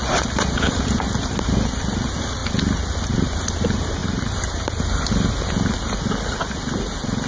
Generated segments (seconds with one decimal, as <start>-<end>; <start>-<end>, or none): none